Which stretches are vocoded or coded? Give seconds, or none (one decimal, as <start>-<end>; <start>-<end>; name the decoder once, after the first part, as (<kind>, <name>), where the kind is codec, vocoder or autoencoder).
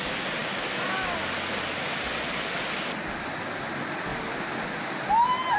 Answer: none